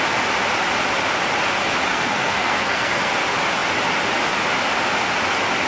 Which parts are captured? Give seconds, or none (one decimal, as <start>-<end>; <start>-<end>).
0.0-1.9; 3.1-5.7